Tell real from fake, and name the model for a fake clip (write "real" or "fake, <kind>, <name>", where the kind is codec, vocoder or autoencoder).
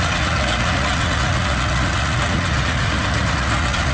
fake, vocoder, Vocos